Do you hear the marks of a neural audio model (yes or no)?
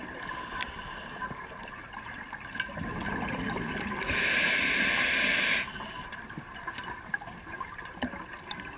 no